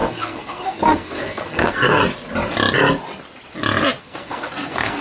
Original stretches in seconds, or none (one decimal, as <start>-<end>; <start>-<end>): 2.0-4.0